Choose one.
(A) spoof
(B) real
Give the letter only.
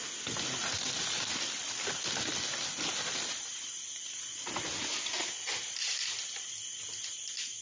B